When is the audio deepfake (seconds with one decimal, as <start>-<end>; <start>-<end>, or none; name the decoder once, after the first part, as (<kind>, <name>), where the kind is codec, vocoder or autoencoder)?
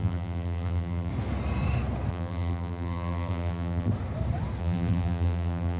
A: 0.0-1.1 (vocoder, BigVGAN v2); 2.1-3.9; 4.6-5.8